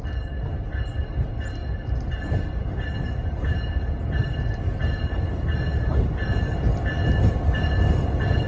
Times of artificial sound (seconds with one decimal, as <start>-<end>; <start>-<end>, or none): none